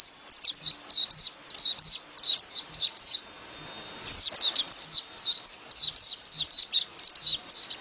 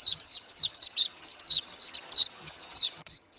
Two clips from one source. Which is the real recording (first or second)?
first